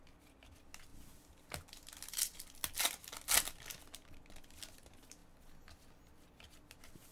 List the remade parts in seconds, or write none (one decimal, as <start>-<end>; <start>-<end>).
none

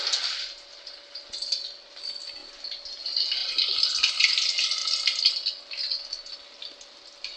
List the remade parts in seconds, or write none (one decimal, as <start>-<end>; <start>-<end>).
0.0-2.4; 3.0-4.8; 6.3-7.4

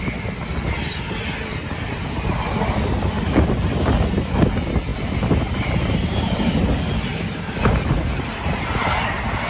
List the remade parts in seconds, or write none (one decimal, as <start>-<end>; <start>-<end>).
7.1-8.2

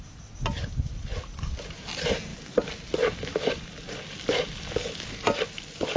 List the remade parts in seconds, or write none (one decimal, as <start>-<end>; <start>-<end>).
none

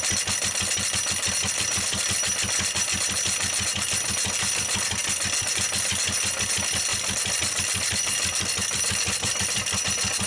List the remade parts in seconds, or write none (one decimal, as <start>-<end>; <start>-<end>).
6.9-9.8

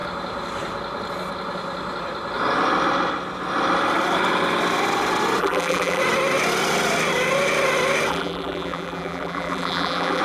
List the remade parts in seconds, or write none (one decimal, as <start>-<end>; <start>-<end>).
5.4-6.0; 8.1-10.2

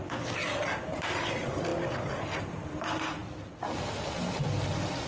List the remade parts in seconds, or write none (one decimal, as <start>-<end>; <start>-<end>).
0.0-3.2

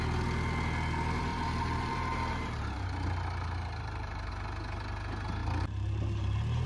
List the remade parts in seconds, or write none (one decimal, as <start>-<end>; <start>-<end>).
1.3-4.3; 5.4-6.7